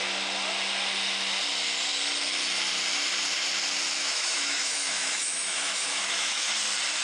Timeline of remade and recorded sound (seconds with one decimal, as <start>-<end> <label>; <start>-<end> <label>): 0.0-4.0 recorded; 4.0-6.5 remade; 6.5-7.0 recorded